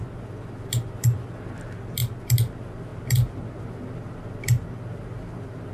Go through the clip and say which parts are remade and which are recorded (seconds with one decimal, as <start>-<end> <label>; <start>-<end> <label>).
0.0-5.7 recorded